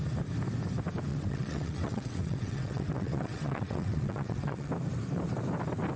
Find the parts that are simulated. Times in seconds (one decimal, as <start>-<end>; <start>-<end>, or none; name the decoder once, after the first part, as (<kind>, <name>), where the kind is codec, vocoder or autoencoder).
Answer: 1.1-4.7 (vocoder, WaveNeXt)